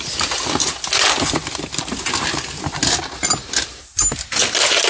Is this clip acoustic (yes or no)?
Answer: yes